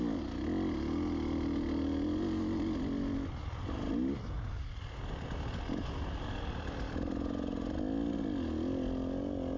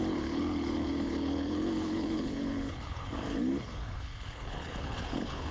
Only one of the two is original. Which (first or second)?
first